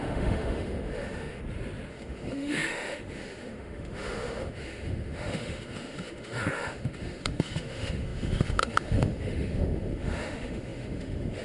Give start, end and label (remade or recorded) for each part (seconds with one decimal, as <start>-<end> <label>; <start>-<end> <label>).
0.0-1.4 remade; 1.4-1.9 recorded; 1.9-11.4 remade